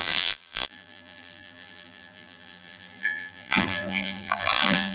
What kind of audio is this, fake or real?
fake